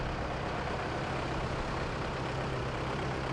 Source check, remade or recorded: remade